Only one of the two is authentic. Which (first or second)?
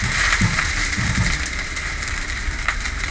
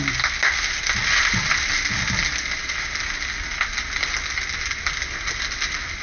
second